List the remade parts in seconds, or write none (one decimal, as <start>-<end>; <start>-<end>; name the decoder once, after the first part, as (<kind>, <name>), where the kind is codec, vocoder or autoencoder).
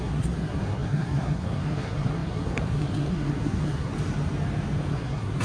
0.0-3.9 (codec, SNAC); 4.9-5.4